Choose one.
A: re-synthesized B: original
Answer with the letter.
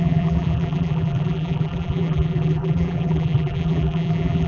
A